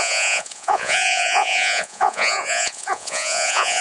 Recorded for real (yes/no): no